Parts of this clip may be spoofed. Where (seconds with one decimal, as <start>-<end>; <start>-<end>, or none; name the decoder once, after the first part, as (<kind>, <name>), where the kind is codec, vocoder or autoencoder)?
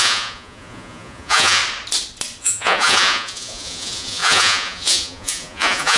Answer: 0.0-1.6 (vocoder, Vocos); 2.4-6.0